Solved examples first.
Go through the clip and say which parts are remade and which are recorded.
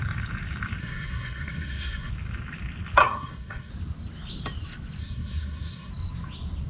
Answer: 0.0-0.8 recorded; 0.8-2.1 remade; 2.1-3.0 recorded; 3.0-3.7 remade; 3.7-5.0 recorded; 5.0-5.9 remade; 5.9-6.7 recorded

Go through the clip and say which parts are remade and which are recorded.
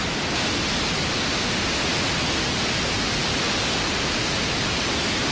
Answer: 0.0-5.3 recorded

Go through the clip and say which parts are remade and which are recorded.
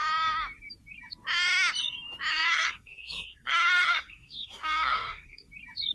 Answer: 0.0-2.3 recorded; 2.3-5.5 remade; 5.5-5.9 recorded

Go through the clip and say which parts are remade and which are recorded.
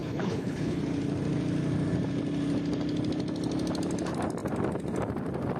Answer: 0.0-0.8 remade; 0.8-5.6 recorded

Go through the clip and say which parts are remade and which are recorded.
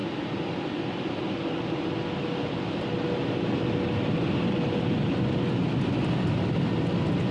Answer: 0.0-7.3 recorded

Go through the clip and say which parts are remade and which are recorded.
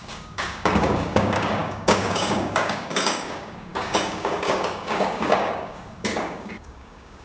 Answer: 0.0-7.2 remade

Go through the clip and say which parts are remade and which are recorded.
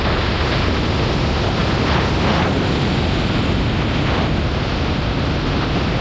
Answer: 0.0-6.0 recorded